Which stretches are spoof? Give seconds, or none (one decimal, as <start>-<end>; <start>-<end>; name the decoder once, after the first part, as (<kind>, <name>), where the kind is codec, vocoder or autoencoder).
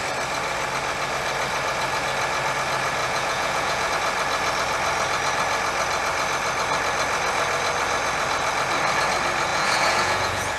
3.0-3.9 (vocoder, Vocos); 9.5-10.6